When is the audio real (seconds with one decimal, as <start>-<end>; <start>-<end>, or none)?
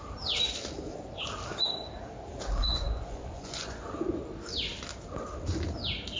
0.0-2.6; 3.9-6.2